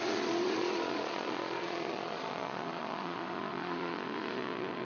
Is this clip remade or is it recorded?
remade